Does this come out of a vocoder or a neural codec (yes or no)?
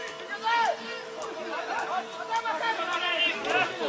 no